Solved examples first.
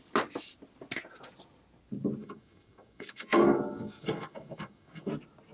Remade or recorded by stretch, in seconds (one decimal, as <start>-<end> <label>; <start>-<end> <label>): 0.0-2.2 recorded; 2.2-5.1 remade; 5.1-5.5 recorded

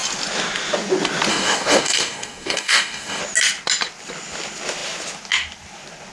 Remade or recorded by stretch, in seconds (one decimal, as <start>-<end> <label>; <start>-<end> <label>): 0.0-1.3 recorded; 1.3-3.2 remade; 3.2-6.1 recorded

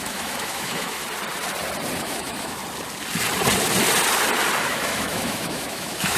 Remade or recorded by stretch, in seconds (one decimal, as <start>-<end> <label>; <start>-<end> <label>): 0.0-1.0 remade; 1.0-2.0 recorded; 2.0-2.6 remade; 2.6-4.6 recorded; 4.6-6.2 remade

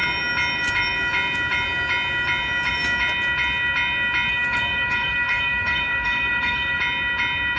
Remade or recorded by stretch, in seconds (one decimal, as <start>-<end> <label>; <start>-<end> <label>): 0.0-4.3 recorded; 4.3-6.8 remade; 6.8-7.6 recorded

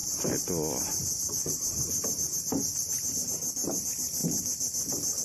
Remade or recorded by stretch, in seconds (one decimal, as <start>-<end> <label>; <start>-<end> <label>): 0.0-5.2 recorded